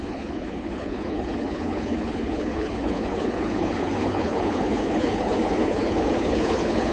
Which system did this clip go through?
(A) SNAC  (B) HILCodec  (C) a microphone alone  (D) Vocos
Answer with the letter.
B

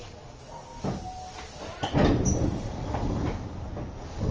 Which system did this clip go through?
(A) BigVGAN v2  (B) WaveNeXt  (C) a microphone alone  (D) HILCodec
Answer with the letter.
C